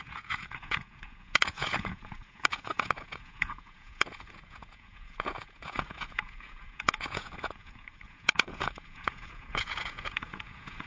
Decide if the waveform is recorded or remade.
remade